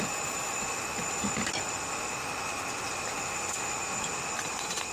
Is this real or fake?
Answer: real